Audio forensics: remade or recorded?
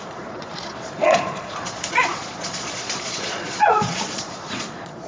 remade